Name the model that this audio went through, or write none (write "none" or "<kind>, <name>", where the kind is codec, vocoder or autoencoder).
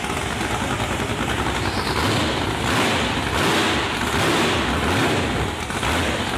none